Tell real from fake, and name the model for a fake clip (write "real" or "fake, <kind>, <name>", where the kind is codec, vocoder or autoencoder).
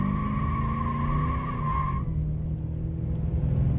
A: real